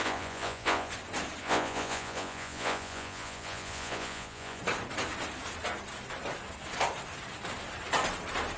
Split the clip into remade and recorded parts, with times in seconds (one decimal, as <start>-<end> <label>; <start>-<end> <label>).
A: 0.0-0.9 remade; 0.9-1.4 recorded; 1.4-4.6 remade; 4.6-8.6 recorded

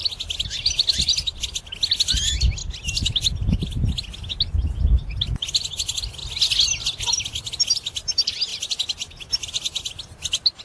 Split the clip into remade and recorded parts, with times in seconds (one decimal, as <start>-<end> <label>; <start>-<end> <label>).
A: 0.0-10.6 recorded

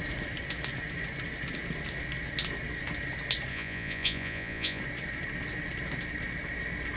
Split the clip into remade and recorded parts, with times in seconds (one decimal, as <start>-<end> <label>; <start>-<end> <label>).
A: 0.0-3.5 recorded; 3.5-4.8 remade; 4.8-7.0 recorded

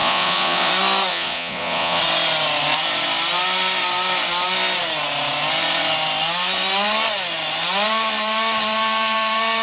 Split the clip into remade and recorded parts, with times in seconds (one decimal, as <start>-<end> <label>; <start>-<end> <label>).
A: 0.0-0.7 remade; 0.7-1.1 recorded; 1.1-2.0 remade; 2.0-9.6 recorded

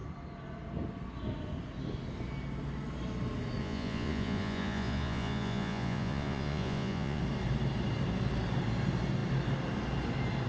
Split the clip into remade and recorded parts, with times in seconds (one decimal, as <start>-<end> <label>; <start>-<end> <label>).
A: 0.0-3.6 recorded; 3.6-7.2 remade; 7.2-10.5 recorded